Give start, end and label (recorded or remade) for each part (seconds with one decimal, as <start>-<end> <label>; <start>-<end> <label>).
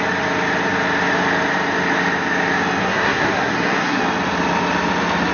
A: 0.0-2.8 recorded; 2.8-4.0 remade; 4.0-5.3 recorded